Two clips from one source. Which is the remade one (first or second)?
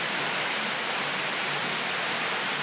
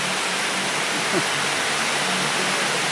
first